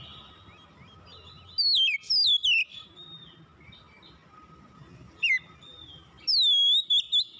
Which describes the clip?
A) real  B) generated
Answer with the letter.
A